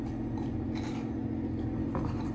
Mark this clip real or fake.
real